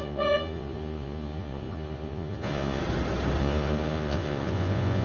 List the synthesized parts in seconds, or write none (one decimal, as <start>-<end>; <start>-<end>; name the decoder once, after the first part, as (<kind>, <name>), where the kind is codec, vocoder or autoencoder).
0.0-2.8 (vocoder, Vocos); 3.4-5.0